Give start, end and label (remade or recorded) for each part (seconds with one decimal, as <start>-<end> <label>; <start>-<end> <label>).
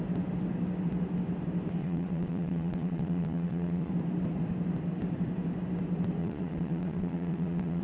0.0-1.8 recorded; 1.8-3.9 remade; 3.9-6.2 recorded; 6.2-7.8 remade